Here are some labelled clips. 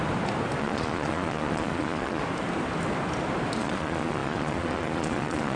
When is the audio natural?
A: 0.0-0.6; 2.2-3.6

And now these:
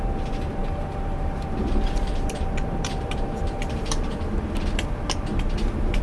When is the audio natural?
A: 0.0-0.6; 4.2-6.0

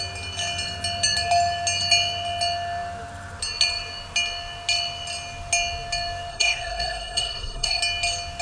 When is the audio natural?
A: 0.0-6.3; 7.8-8.4